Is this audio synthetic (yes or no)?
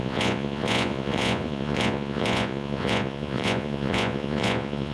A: yes